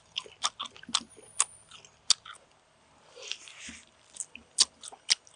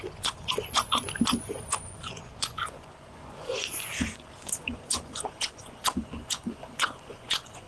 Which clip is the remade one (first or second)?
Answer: second